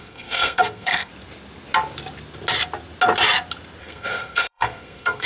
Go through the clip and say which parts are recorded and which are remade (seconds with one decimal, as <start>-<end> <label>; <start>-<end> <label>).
0.0-1.1 remade; 1.1-3.8 recorded; 3.8-5.3 remade